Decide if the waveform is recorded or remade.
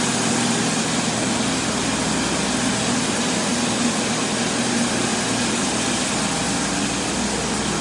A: recorded